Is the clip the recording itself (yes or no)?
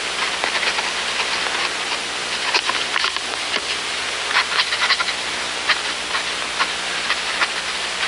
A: yes